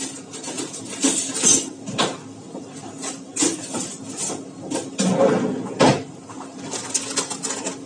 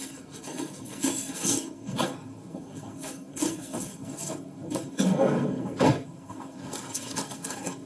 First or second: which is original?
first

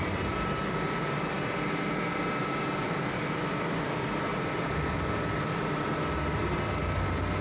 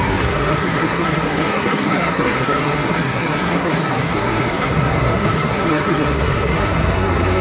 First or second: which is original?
first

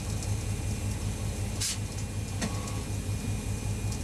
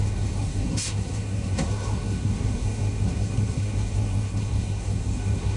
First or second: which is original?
first